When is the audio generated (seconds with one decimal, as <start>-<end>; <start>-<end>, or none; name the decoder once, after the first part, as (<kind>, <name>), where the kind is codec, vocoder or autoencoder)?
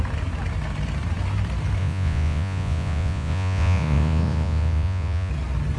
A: 1.8-5.3 (vocoder, Vocos)